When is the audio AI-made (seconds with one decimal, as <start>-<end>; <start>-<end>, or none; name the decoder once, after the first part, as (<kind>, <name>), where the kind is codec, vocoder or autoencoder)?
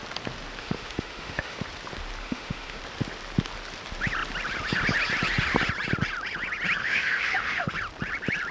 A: 0.6-1.6 (autoencoder, DAC-VAE); 2.2-2.8; 6.8-7.7